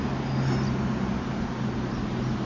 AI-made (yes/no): no